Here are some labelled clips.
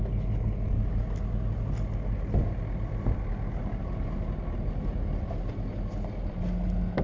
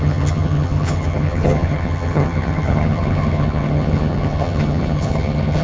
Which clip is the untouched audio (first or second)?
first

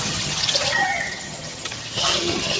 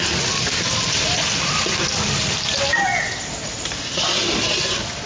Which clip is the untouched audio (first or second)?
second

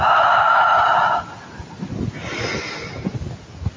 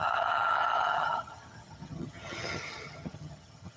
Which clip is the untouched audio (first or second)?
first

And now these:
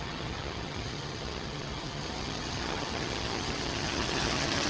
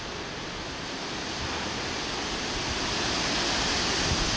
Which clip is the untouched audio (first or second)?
second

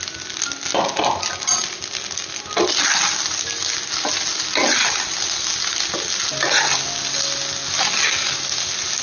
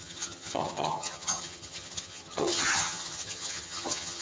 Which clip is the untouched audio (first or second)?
first